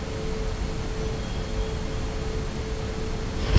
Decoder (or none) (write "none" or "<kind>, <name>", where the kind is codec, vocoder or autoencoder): none